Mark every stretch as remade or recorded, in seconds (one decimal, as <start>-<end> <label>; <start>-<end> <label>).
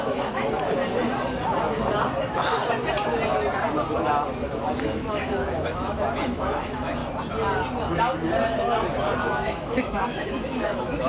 0.0-0.4 remade; 0.4-4.8 recorded; 4.8-7.0 remade; 7.0-9.2 recorded; 9.2-11.1 remade